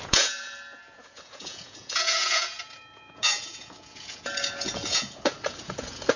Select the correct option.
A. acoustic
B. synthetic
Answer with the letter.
B